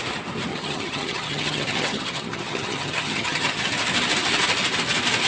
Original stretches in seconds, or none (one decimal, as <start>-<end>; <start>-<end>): 0.0-0.5; 3.7-5.3

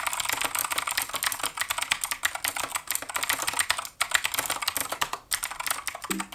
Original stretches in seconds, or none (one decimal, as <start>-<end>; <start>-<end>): 0.0-4.8; 5.7-6.3

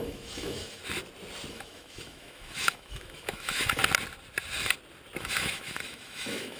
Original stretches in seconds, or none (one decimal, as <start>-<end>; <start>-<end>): 0.8-1.5; 3.8-5.2